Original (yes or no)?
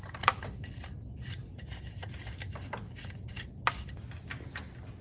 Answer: yes